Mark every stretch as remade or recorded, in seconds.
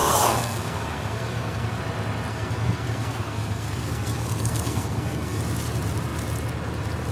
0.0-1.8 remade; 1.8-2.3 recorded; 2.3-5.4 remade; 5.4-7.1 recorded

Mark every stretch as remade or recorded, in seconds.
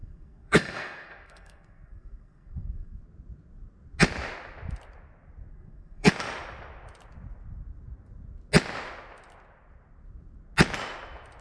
0.0-3.0 remade; 3.0-5.5 recorded; 5.5-6.1 remade; 6.1-11.4 recorded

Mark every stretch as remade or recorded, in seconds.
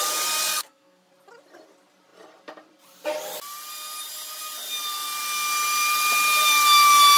0.0-0.5 recorded; 0.5-1.1 remade; 1.1-7.2 recorded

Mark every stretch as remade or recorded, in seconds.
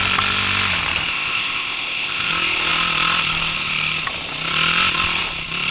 0.0-1.1 recorded; 1.1-2.3 remade; 2.3-5.7 recorded